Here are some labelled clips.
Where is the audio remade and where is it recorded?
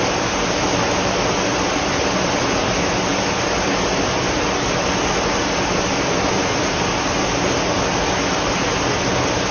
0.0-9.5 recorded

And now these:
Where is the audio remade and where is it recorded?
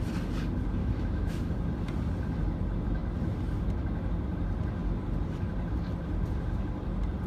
0.0-0.8 recorded; 0.8-1.5 remade; 1.5-7.3 recorded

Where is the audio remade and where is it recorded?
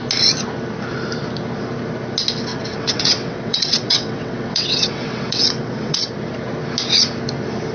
0.0-2.5 recorded; 2.5-6.1 remade; 6.1-7.7 recorded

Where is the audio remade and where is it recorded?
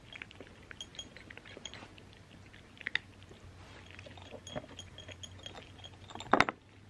0.0-0.9 recorded; 0.9-1.8 remade; 1.8-6.9 recorded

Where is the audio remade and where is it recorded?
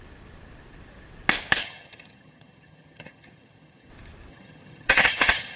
0.0-1.6 recorded; 1.6-3.9 remade; 3.9-4.3 recorded; 4.3-5.6 remade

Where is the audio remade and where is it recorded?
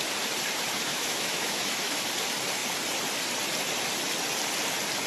0.0-0.9 recorded; 0.9-2.1 remade; 2.1-5.1 recorded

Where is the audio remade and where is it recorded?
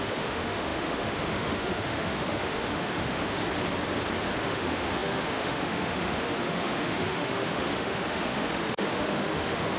0.0-3.4 remade; 3.4-4.4 recorded; 4.4-9.8 remade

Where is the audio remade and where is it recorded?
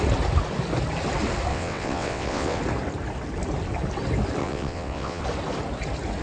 0.0-1.5 recorded; 1.5-2.6 remade; 2.6-4.4 recorded; 4.4-5.2 remade; 5.2-6.2 recorded